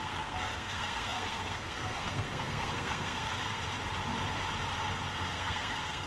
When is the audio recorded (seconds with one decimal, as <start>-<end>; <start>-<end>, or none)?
3.6-5.1